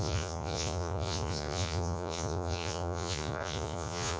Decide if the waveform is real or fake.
fake